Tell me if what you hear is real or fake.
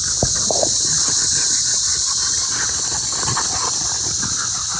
real